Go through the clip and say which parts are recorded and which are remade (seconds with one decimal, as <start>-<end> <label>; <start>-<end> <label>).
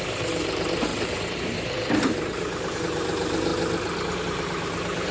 0.0-3.5 remade; 3.5-4.2 recorded; 4.2-5.1 remade